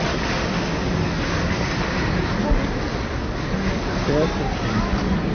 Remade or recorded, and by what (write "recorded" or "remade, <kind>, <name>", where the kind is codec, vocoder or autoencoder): recorded